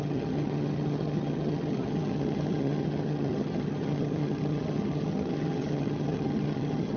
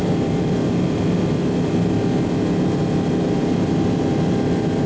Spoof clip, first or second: first